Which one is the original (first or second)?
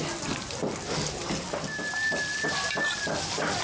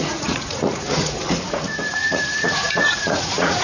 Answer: first